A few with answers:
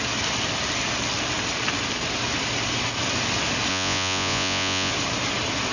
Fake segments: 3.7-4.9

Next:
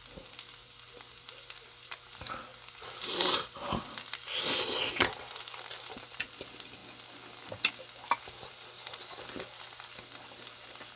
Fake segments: none